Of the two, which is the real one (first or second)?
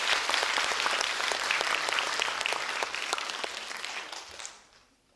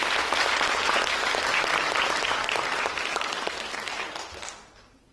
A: second